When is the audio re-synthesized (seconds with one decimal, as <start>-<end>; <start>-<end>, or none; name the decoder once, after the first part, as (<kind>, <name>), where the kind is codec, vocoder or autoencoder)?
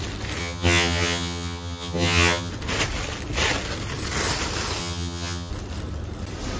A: 0.4-2.5 (vocoder, HiFi-GAN); 4.8-5.5